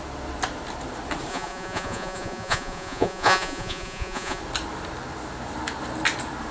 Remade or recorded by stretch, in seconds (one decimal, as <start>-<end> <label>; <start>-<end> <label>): 0.0-1.3 recorded; 1.3-4.4 remade; 4.4-6.5 recorded